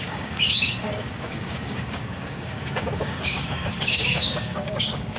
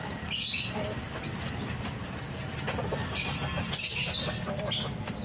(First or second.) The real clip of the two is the second